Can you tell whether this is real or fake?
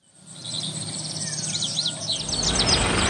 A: real